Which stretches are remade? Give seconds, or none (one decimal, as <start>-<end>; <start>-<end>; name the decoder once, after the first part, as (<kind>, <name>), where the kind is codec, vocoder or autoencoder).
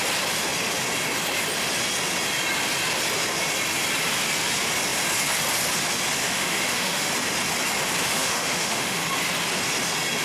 6.2-7.1 (autoencoder, DAC-VAE); 8.0-9.0